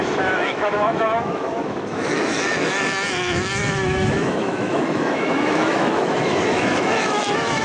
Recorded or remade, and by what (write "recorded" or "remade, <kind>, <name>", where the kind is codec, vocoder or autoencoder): remade, autoencoder, DAC-VAE